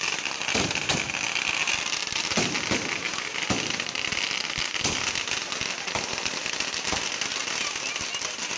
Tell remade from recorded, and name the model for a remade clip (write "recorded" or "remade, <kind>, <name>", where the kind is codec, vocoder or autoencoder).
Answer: recorded